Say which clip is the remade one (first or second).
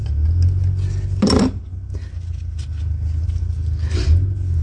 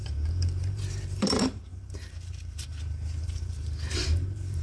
second